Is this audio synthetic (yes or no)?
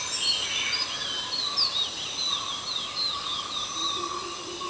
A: no